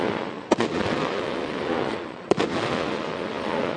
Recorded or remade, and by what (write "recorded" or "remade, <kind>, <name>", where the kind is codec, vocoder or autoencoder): remade, vocoder, Vocos